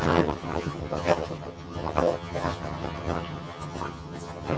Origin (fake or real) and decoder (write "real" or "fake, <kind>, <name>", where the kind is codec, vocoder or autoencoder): fake, vocoder, HiFi-GAN